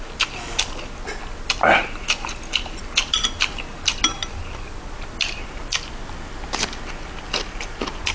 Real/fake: real